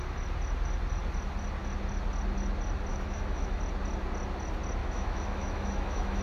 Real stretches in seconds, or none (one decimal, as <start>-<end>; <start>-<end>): 0.0-2.9; 3.6-4.8